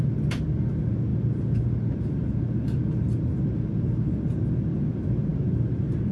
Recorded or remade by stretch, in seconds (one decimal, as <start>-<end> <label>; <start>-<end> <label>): 0.0-6.1 recorded